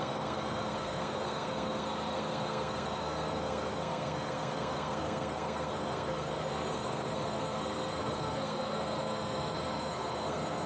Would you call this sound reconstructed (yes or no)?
yes